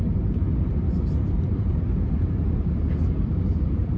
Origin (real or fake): fake